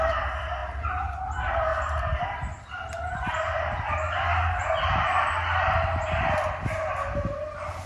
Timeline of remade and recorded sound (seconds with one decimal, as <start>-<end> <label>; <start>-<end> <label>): 0.0-7.9 recorded